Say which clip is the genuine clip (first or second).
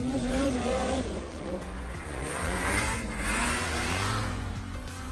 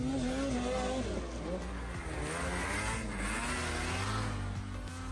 second